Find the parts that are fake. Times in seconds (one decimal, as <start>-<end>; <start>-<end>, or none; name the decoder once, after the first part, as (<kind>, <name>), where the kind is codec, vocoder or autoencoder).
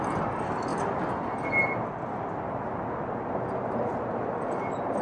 none